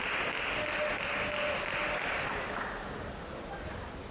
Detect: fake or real real